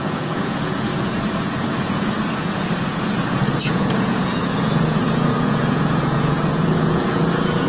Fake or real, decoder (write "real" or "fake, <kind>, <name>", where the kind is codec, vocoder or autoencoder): fake, vocoder, Vocos